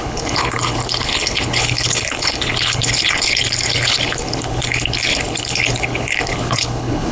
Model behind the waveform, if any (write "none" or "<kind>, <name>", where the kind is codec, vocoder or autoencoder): codec, HILCodec